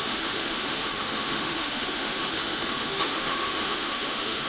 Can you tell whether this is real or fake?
fake